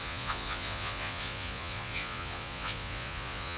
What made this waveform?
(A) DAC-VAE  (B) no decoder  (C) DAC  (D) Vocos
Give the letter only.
D